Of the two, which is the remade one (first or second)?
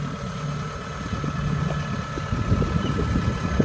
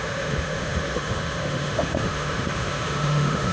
second